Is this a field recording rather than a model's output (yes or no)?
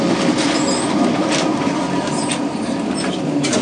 no